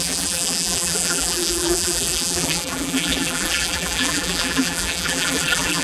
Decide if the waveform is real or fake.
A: fake